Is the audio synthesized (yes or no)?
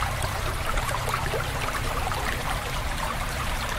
yes